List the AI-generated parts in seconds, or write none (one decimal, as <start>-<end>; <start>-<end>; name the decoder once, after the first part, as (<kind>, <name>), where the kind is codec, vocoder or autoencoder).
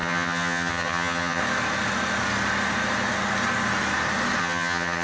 0.0-1.4 (vocoder, HiFi-GAN); 4.4-5.0